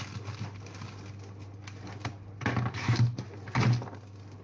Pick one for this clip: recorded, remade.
recorded